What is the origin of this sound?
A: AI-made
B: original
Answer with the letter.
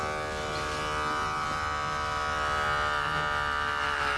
B